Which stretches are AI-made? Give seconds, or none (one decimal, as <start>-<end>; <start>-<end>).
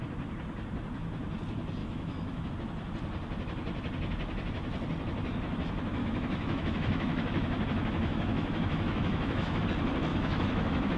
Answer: 1.8-2.5; 6.0-9.6; 10.1-11.0